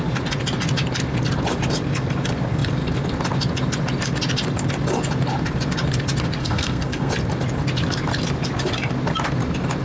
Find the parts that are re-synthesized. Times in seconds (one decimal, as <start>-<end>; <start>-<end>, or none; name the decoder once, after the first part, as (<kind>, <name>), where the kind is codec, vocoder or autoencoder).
6.4-7.1 (codec, SNAC)